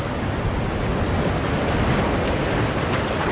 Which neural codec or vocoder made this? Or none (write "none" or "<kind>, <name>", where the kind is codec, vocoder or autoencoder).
none